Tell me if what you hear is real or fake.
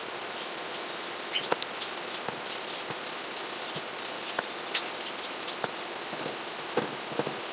real